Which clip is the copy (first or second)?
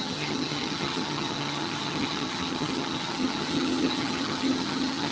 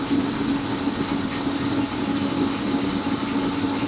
first